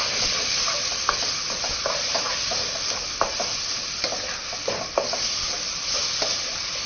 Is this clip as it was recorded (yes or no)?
yes